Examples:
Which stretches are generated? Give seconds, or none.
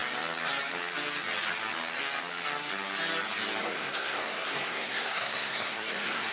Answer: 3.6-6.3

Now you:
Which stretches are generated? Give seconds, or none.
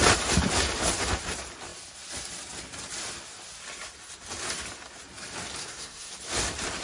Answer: 5.6-6.1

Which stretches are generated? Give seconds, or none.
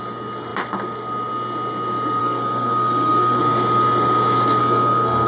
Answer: 2.2-3.4; 4.6-5.3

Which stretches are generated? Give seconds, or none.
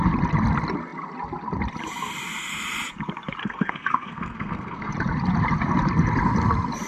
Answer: 3.4-4.9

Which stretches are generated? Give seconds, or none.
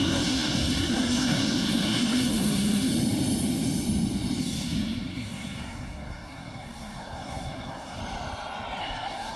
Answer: 0.0-2.9; 4.4-8.0; 8.8-9.4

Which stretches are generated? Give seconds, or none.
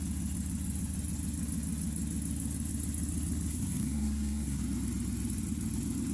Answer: 3.5-4.6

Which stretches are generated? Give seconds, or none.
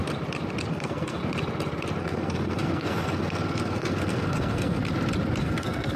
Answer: 0.7-1.2; 2.0-4.8; 5.4-6.0